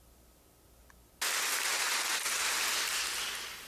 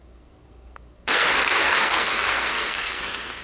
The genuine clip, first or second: first